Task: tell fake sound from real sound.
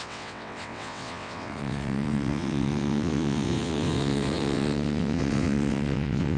fake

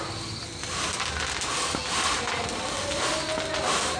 real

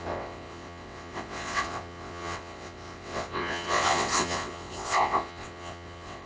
fake